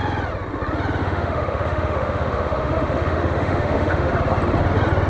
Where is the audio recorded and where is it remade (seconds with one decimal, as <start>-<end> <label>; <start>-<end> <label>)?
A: 0.0-1.0 recorded; 1.0-4.1 remade; 4.1-5.1 recorded